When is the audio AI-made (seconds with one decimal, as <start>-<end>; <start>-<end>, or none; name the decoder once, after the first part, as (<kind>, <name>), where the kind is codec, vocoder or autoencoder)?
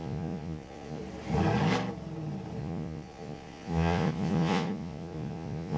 0.0-1.0 (vocoder, Vocos); 2.6-5.8